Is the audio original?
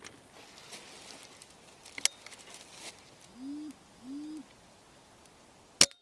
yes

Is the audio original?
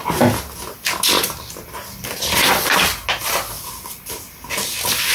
yes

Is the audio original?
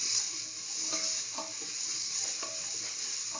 yes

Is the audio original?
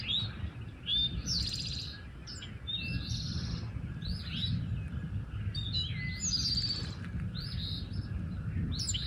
yes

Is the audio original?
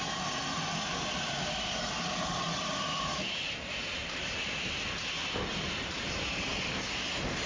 yes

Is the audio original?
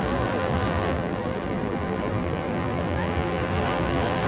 no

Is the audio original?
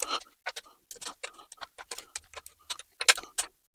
yes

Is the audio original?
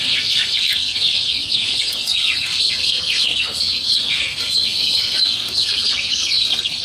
no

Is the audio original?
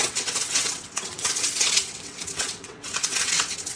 no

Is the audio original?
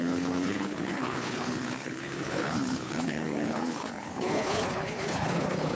no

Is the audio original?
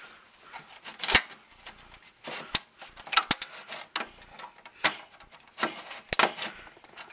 yes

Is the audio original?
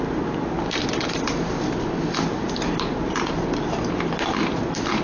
yes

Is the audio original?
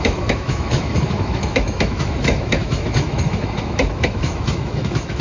no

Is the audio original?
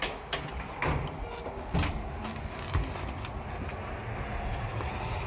yes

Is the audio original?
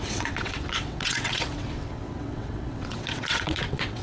no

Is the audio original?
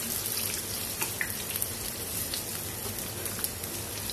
yes